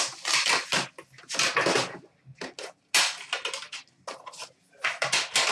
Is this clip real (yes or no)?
yes